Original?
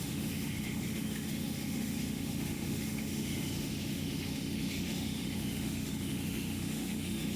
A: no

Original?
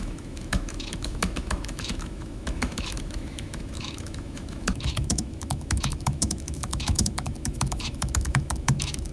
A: no